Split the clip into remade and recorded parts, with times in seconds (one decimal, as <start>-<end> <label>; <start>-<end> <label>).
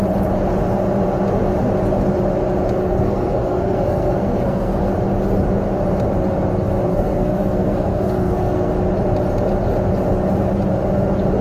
0.0-2.8 recorded; 2.8-4.9 remade; 4.9-6.9 recorded; 6.9-8.7 remade; 8.7-11.4 recorded